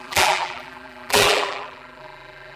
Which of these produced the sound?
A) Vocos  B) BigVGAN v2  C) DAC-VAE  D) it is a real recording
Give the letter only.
B